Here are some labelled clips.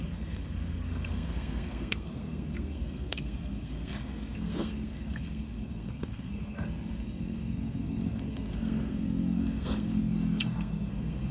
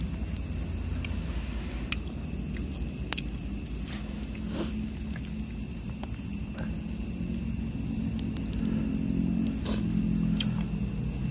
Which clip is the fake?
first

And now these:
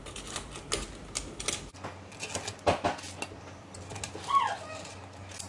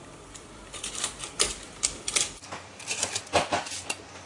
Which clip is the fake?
second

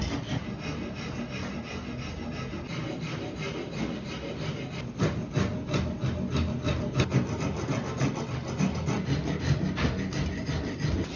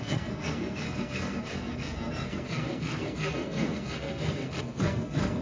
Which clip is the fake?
second